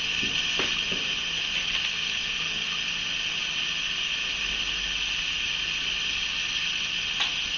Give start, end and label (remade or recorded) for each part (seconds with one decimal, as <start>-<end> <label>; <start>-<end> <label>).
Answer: 0.0-7.6 recorded